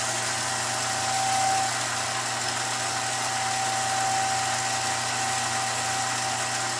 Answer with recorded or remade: recorded